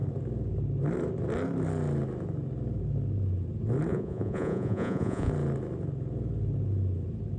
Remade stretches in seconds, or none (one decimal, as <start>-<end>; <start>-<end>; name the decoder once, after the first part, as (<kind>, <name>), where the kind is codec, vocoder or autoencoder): 3.9-5.3 (vocoder, Vocos)